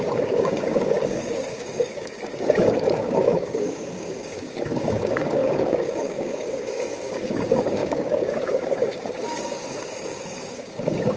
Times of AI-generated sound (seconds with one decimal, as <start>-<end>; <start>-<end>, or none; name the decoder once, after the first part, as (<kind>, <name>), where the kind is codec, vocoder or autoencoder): 0.0-11.2 (codec, DAC)